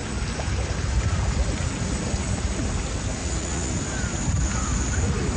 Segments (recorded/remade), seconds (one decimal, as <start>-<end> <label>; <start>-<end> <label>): 0.0-3.2 recorded; 3.2-3.7 remade; 3.7-5.4 recorded